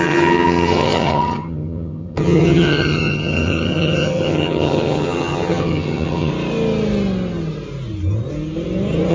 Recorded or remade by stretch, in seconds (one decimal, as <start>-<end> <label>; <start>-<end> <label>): 0.0-6.3 remade; 6.3-9.1 recorded